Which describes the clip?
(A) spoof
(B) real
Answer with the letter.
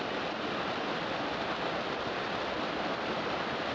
B